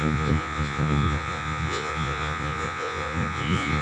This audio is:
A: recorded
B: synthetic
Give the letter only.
B